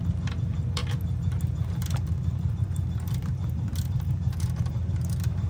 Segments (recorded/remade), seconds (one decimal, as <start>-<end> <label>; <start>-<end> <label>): 0.0-5.5 remade